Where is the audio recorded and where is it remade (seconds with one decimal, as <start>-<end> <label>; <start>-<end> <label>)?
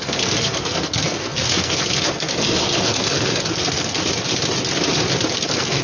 0.0-4.0 remade; 4.0-5.3 recorded; 5.3-5.8 remade